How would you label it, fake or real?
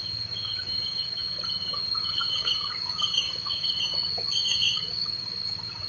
fake